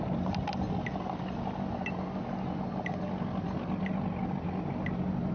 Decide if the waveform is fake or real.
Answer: real